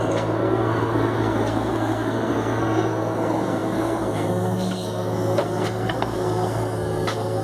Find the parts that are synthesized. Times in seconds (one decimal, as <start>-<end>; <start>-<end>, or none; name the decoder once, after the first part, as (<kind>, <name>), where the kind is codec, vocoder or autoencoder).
0.0-7.4 (codec, SNAC)